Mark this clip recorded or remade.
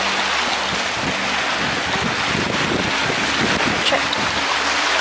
recorded